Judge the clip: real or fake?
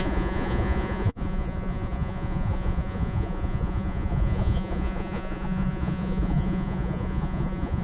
fake